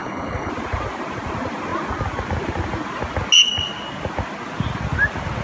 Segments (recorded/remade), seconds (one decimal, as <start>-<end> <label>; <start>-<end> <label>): 0.0-0.5 remade; 0.5-5.4 recorded